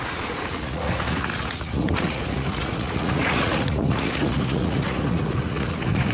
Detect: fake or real fake